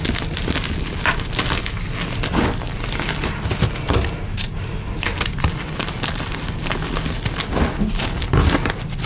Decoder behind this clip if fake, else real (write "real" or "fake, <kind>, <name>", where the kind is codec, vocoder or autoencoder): real